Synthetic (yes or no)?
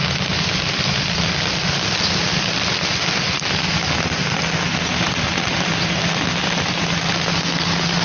no